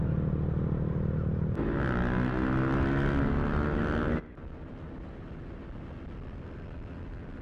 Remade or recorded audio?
recorded